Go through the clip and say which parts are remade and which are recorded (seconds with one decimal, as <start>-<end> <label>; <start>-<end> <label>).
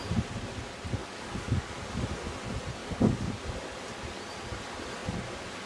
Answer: 0.0-1.0 recorded; 1.0-2.0 remade; 2.0-2.8 recorded; 2.8-3.3 remade; 3.3-5.7 recorded